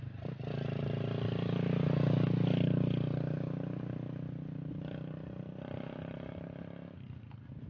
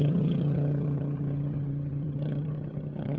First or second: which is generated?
second